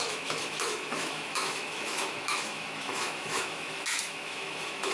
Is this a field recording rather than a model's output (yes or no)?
no